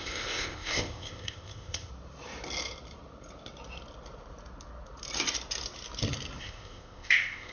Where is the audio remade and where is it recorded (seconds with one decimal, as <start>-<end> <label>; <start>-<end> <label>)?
0.0-1.9 remade; 1.9-6.4 recorded; 6.4-7.5 remade